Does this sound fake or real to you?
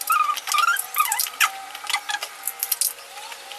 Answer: real